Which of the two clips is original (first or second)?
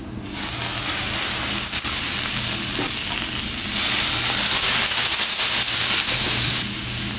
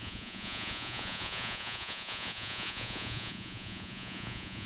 first